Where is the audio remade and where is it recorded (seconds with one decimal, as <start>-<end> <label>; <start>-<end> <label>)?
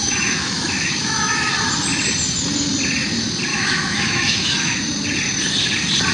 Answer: 0.0-1.5 remade; 1.5-3.5 recorded; 3.5-4.8 remade; 4.8-6.1 recorded